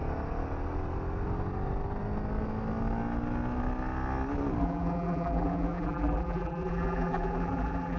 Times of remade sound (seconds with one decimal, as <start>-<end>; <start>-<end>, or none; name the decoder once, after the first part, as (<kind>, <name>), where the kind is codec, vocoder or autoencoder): 4.6-8.0 (vocoder, BigVGAN v2)